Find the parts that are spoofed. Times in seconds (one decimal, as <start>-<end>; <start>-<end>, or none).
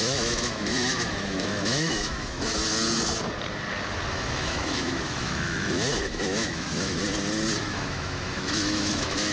0.0-2.6; 4.1-7.0; 7.6-9.3